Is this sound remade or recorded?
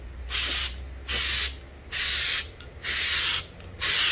recorded